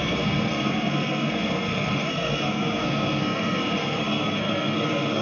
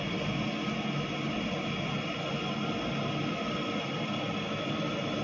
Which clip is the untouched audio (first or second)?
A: second